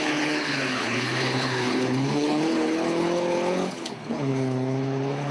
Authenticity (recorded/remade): remade